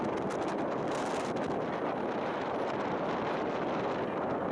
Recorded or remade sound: recorded